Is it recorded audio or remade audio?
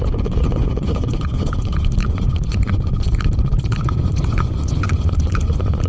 remade